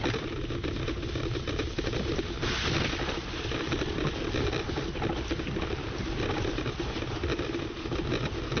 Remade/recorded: recorded